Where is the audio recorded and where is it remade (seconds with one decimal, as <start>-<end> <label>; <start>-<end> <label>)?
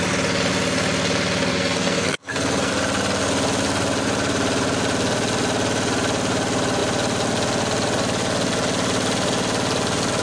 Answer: 0.0-1.5 recorded; 1.5-2.7 remade; 2.7-10.2 recorded